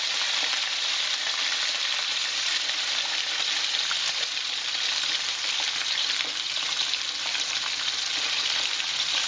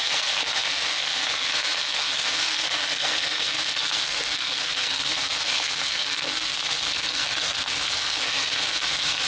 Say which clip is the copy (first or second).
second